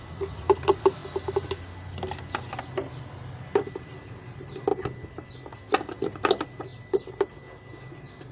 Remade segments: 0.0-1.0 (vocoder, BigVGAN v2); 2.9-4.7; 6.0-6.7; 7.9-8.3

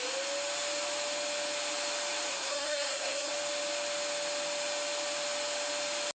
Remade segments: 2.3-3.3 (codec, SNAC)